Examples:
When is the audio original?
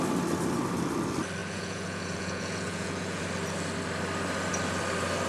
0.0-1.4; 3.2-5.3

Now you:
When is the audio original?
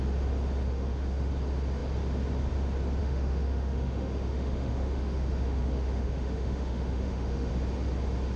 0.0-0.7; 1.3-3.0; 7.5-8.4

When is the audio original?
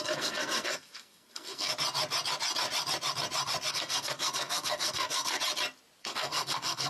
1.7-3.7; 5.4-6.0